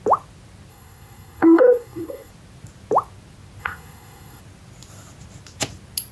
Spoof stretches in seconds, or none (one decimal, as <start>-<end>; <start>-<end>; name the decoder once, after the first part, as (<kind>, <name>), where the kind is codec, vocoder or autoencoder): 0.7-2.3 (codec, SNAC); 3.6-4.4